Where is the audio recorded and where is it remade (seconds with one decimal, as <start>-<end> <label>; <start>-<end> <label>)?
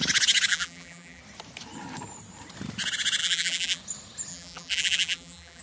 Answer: 0.0-0.5 recorded; 0.5-1.2 remade; 1.2-3.2 recorded; 3.2-3.8 remade; 3.8-4.3 recorded; 4.3-5.6 remade